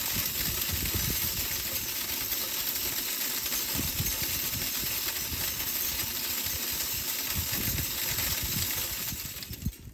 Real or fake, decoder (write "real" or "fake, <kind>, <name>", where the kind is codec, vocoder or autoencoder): real